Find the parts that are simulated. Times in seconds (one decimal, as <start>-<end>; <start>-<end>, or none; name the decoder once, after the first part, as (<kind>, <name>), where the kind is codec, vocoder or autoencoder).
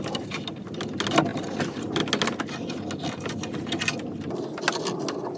none